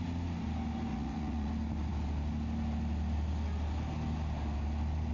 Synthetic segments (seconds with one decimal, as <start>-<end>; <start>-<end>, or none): 0.9-1.5